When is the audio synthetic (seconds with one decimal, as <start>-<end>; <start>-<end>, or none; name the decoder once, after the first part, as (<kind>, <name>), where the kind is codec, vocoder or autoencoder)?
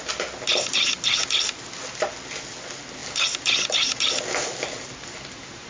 none